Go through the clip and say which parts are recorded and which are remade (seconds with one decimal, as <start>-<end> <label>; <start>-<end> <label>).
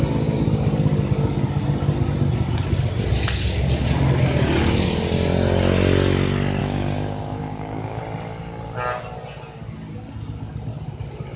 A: 0.0-6.6 recorded; 6.6-8.0 remade; 8.0-11.4 recorded